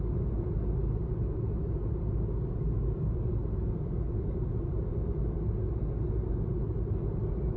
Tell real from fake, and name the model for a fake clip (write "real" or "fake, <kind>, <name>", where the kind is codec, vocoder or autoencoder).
real